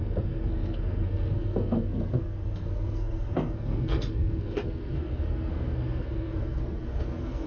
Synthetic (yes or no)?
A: yes